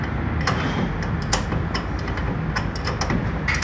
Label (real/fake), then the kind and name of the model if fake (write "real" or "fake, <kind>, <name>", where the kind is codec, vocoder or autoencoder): real